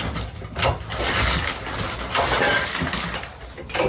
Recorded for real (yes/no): yes